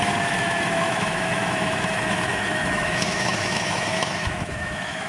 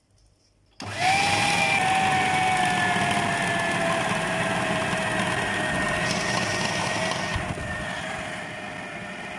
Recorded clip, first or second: second